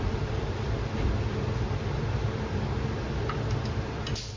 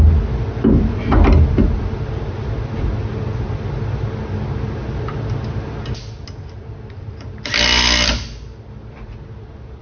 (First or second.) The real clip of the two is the second